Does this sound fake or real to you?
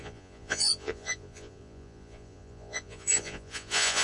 fake